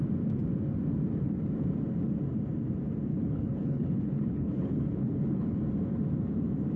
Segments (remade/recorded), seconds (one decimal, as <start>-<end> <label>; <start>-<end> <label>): 0.0-3.1 recorded; 3.1-5.6 remade; 5.6-6.8 recorded